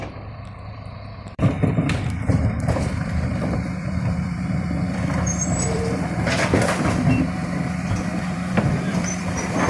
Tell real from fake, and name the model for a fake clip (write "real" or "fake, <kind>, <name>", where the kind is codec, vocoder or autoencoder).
fake, vocoder, BigVGAN v2